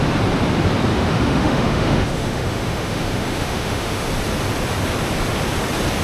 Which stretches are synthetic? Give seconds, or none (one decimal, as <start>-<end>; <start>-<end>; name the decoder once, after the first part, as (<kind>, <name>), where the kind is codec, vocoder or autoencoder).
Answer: 0.9-4.1 (autoencoder, DAC-VAE)